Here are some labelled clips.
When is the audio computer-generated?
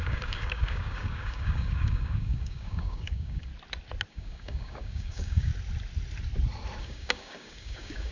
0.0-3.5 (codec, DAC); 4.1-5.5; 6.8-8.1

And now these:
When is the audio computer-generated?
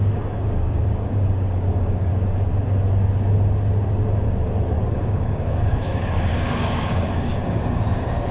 0.0-2.1 (codec, DAC); 4.9-8.3